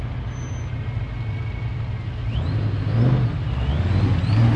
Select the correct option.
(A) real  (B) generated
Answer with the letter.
A